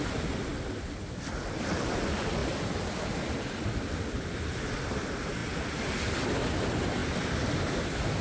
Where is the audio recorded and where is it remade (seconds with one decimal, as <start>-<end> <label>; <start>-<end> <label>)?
0.0-8.2 recorded